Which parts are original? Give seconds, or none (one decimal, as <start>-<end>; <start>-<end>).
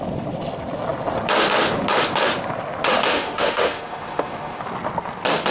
0.0-3.1; 4.6-5.5